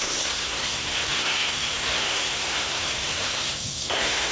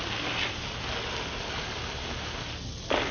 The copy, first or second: first